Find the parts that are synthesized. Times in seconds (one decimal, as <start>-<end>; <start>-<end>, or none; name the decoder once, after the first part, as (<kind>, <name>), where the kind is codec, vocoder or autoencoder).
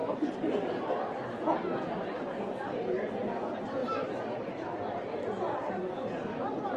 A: 3.8-5.7 (vocoder, BigVGAN v2)